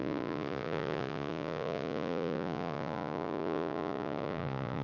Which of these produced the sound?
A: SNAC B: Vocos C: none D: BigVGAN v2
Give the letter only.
B